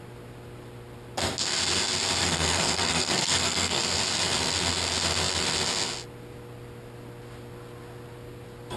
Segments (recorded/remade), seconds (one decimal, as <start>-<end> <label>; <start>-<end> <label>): 0.0-2.2 recorded; 2.2-3.8 remade; 3.8-8.8 recorded